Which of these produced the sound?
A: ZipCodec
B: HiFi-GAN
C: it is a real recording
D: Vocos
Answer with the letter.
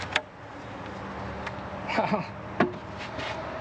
C